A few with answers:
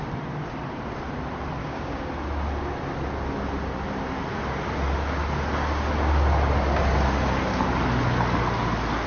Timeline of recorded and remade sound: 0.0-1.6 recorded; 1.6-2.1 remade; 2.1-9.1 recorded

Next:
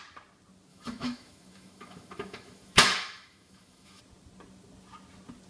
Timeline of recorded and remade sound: 0.0-0.7 recorded; 0.7-4.0 remade; 4.0-5.5 recorded

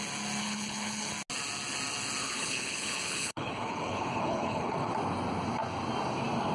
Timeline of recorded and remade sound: 0.0-0.4 recorded; 0.4-1.1 remade; 1.1-2.2 recorded; 2.2-4.9 remade; 4.9-6.5 recorded

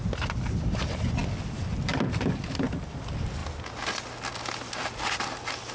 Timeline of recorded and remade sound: 0.0-5.7 recorded

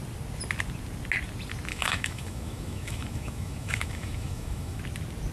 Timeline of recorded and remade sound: 0.0-1.7 recorded; 1.7-4.8 remade; 4.8-5.3 recorded

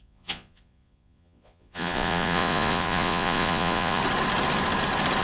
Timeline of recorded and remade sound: 0.0-4.0 remade; 4.0-5.2 recorded

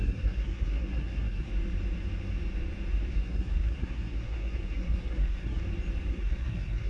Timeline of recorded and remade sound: 0.0-1.5 remade; 1.5-3.1 recorded; 3.1-5.6 remade; 5.6-6.1 recorded; 6.1-6.9 remade

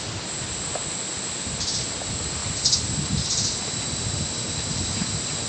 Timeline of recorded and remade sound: 0.0-5.5 recorded